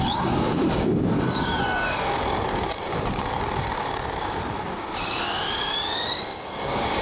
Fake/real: fake